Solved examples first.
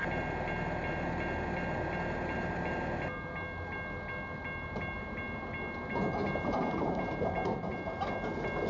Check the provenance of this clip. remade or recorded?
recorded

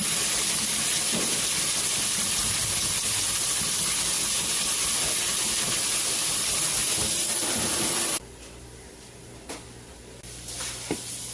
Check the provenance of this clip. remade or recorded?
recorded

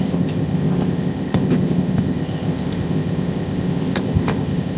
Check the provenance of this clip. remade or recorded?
remade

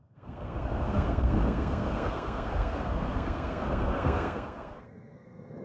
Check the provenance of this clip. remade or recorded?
remade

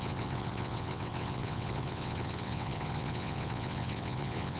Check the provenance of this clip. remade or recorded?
remade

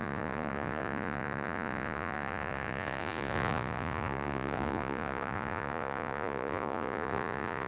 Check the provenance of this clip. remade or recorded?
remade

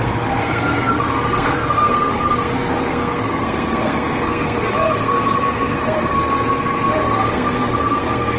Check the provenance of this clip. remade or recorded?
remade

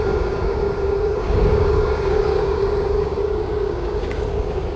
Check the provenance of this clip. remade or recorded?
remade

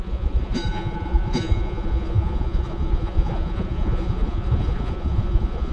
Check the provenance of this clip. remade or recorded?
remade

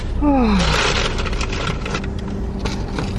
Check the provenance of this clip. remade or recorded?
recorded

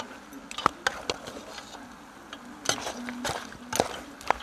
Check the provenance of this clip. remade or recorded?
recorded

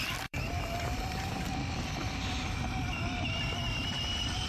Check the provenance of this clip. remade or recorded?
remade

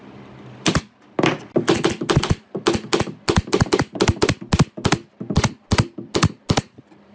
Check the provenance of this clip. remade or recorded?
recorded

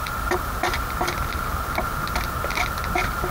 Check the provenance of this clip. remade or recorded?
recorded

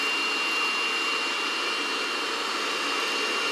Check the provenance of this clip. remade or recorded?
recorded